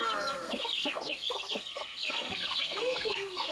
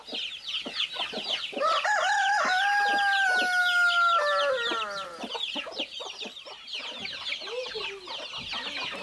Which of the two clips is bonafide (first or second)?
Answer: second